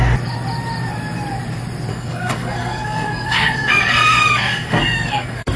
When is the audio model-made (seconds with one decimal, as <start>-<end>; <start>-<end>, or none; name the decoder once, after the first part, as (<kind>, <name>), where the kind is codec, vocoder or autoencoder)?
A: 1.9-5.6 (codec, SNAC)